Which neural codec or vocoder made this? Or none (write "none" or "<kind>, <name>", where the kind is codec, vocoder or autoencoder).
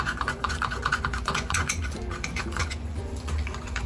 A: vocoder, Vocos